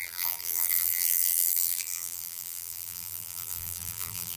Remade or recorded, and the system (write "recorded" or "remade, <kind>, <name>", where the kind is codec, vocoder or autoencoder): remade, vocoder, BigVGAN v2